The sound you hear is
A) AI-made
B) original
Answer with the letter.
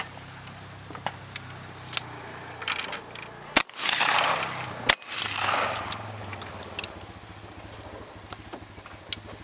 B